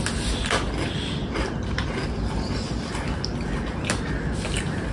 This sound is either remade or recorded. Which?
recorded